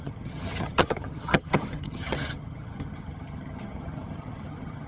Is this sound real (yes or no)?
no